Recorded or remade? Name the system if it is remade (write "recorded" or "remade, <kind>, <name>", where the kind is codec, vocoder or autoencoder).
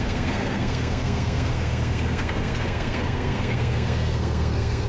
remade, codec, SNAC